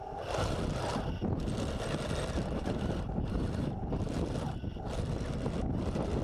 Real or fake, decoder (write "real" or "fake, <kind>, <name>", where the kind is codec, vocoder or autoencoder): real